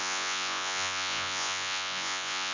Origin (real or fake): fake